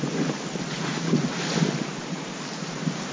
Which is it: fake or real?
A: real